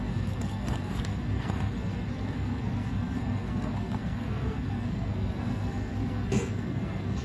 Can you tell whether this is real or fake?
fake